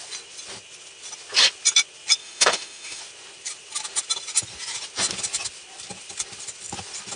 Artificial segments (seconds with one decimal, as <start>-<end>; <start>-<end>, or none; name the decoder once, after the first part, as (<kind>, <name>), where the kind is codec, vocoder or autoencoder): 2.2-3.0 (autoencoder, DAC-VAE)